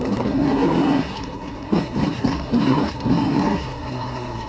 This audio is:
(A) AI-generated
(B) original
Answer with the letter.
A